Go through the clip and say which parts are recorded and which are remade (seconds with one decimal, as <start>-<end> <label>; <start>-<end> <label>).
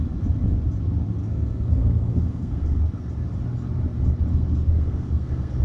0.0-1.2 recorded; 1.2-2.8 remade; 2.8-4.3 recorded; 4.3-5.6 remade